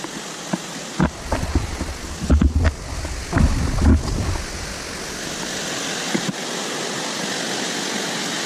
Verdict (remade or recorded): recorded